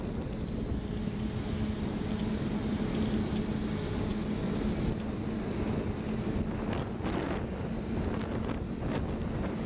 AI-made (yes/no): no